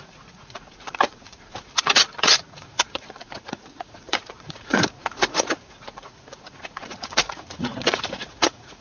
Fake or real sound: fake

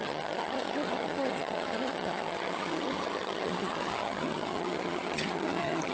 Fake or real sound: fake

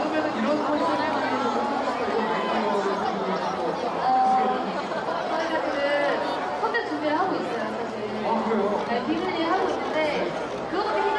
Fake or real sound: real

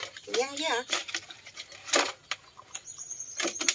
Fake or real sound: real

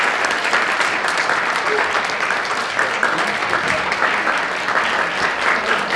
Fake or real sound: real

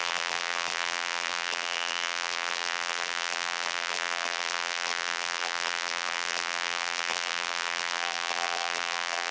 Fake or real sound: fake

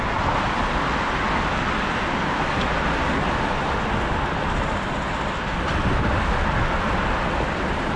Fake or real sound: real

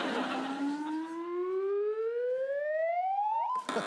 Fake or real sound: real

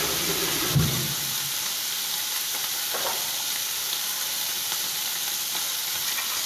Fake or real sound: real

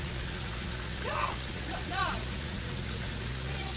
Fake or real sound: fake